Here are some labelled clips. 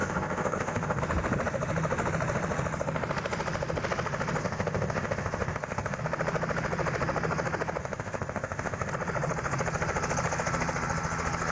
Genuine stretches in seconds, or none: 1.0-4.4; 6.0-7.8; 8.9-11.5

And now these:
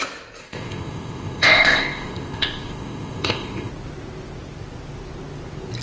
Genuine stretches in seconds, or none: 0.0-0.4; 3.7-5.8

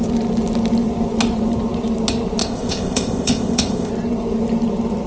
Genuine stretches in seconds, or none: 0.0-2.4; 3.9-5.1

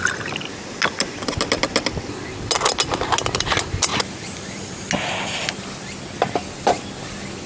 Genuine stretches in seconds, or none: 0.0-7.5

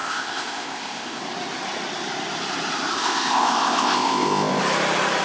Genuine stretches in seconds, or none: 1.2-2.9; 4.6-5.2

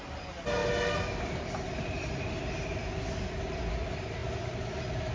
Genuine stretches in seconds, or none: 0.0-5.1